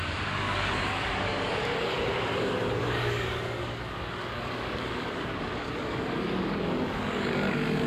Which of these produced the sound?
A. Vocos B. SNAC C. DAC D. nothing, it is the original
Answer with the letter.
C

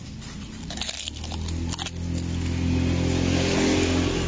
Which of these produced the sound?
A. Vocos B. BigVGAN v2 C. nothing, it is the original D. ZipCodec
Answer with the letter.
C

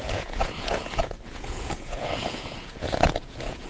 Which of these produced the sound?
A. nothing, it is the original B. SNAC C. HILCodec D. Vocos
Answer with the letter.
D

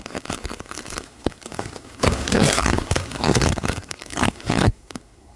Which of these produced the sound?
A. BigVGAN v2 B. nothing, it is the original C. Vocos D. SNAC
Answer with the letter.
D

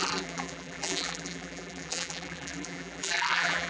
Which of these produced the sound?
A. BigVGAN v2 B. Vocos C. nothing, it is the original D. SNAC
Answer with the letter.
A